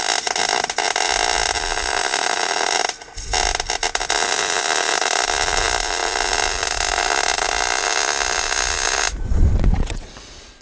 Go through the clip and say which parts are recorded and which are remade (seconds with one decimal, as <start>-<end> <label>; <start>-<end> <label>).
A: 0.0-9.3 recorded; 9.3-10.1 remade; 10.1-10.6 recorded